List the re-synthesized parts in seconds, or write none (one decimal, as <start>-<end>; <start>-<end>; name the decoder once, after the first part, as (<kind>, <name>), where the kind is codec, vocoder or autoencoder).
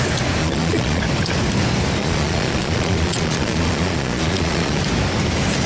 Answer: 0.4-1.0 (vocoder, Vocos); 2.0-4.8